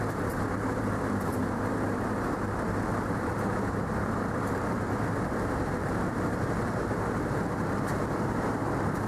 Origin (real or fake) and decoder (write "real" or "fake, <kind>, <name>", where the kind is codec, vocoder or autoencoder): fake, vocoder, BigVGAN v2